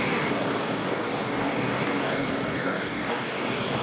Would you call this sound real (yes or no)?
no